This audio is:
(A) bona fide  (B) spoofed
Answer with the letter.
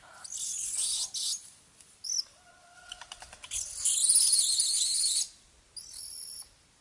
A